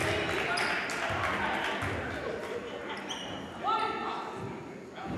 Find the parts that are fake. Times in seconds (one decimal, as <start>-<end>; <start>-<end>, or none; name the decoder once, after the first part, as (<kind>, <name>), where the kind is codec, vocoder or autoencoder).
none